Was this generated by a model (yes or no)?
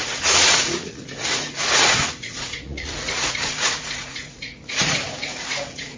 yes